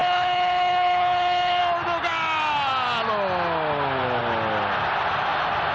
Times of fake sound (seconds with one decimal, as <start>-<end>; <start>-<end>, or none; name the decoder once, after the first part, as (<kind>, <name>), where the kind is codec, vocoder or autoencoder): 0.0-1.6 (codec, HILCodec)

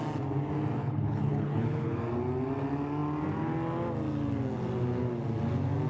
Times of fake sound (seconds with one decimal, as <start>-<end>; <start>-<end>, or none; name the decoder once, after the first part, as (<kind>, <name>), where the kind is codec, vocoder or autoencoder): 0.8-2.0 (codec, HILCodec)